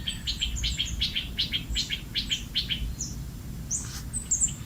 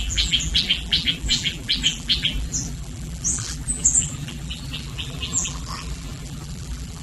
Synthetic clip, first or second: second